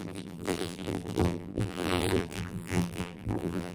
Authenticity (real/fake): fake